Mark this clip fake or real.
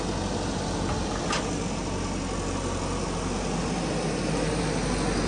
real